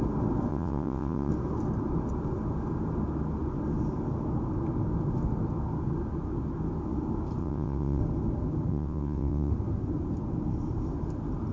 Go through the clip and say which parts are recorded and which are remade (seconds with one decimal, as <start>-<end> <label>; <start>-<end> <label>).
0.0-0.5 recorded; 0.5-1.3 remade; 1.3-7.4 recorded; 7.4-8.0 remade; 8.0-8.7 recorded; 8.7-9.5 remade; 9.5-11.5 recorded